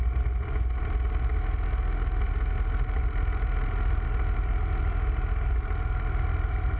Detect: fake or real real